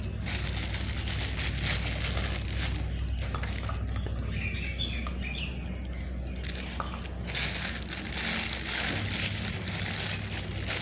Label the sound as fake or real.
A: real